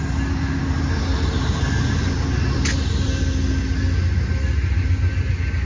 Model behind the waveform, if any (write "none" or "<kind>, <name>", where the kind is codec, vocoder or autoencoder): none